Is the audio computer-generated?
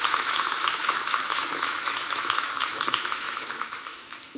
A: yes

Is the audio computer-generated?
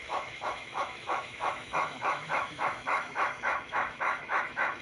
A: yes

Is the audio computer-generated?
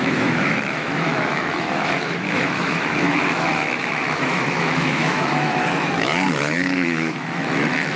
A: yes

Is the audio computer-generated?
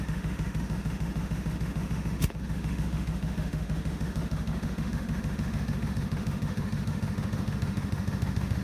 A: yes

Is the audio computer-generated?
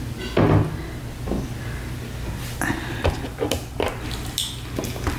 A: no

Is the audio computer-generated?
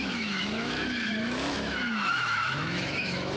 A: yes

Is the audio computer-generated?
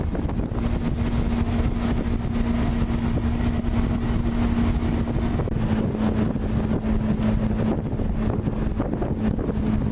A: no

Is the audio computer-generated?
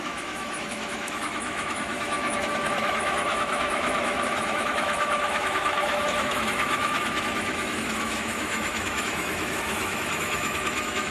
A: yes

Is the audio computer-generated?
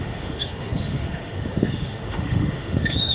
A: yes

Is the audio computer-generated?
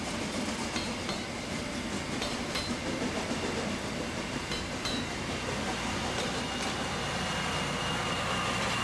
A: no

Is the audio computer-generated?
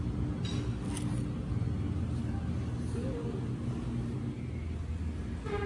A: no